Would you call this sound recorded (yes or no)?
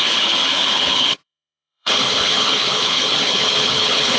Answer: no